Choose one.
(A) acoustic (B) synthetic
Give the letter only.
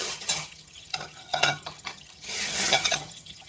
B